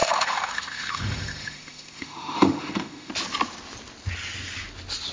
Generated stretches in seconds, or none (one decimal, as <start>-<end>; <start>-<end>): 0.0-3.1

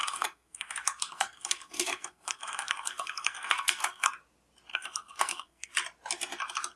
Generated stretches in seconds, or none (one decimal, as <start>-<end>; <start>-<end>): 0.0-4.1; 4.7-5.7

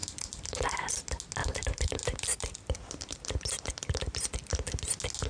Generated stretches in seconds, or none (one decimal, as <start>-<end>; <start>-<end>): 0.0-0.9; 1.4-4.3